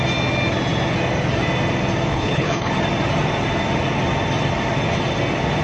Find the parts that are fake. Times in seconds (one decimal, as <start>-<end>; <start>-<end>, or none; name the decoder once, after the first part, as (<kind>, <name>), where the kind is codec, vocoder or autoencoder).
2.1-2.7 (codec, HILCodec)